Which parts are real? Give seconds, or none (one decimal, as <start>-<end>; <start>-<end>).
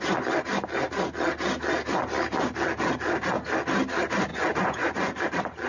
0.0-4.3; 5.2-5.7